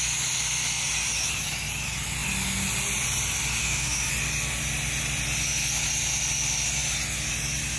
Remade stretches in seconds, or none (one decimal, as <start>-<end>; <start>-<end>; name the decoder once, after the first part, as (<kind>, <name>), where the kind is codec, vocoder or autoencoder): 3.6-4.1 (autoencoder, DAC-VAE)